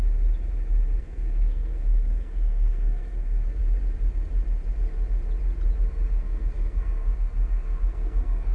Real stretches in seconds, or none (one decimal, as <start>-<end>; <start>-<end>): 0.0-1.0; 3.6-6.1